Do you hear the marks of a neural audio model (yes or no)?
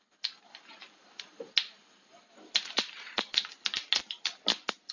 no